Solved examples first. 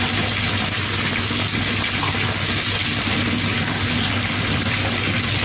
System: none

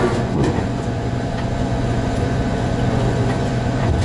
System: vocoder, Vocos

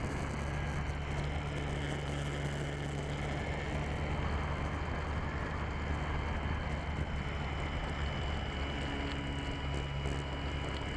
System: none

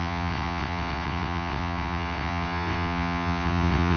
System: vocoder, WaveNeXt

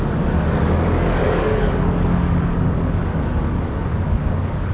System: codec, DAC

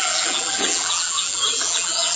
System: vocoder, BigVGAN v2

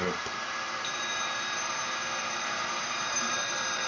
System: vocoder, BigVGAN v2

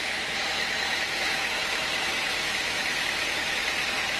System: autoencoder, DAC-VAE